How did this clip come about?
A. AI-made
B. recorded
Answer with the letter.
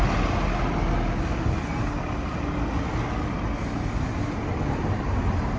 B